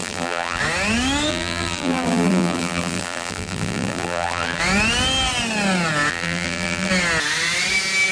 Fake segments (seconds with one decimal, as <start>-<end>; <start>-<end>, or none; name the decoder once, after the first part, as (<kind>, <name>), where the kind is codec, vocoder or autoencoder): 0.0-0.6 (vocoder, BigVGAN v2); 1.3-4.6; 6.1-6.9